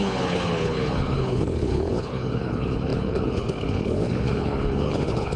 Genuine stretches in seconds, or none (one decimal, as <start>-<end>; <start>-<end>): none